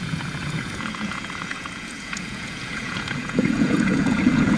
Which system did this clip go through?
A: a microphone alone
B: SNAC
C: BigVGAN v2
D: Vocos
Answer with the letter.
D